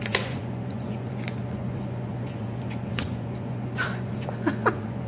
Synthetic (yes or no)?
yes